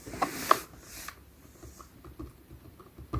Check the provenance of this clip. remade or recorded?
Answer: recorded